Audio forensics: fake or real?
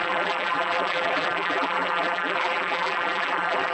fake